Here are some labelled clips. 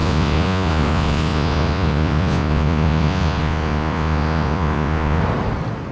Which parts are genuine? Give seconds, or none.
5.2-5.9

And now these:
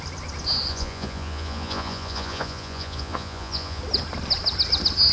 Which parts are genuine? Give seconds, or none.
0.0-0.7; 3.8-5.1